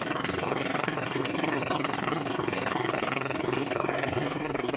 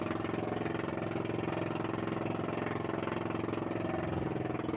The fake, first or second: first